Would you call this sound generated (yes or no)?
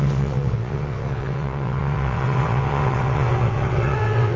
yes